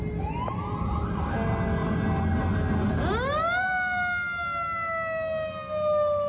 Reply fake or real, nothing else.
real